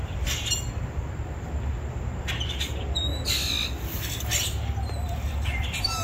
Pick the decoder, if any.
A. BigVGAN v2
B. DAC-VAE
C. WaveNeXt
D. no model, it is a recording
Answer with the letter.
D